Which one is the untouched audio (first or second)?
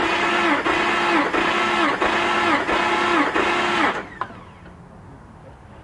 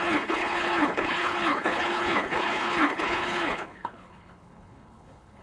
first